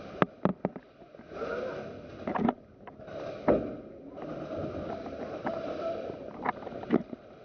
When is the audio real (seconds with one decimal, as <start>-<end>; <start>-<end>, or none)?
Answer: 0.0-7.4